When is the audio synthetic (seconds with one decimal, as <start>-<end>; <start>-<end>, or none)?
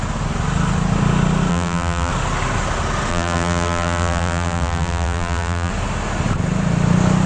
1.5-2.1; 3.1-5.7